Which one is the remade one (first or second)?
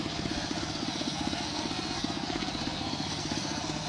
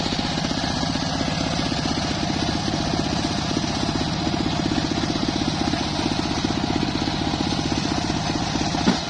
first